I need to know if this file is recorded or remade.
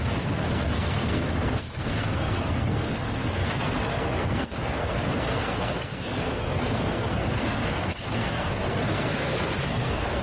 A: remade